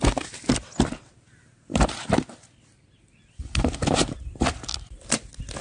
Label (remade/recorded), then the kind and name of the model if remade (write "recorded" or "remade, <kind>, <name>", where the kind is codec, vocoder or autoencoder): recorded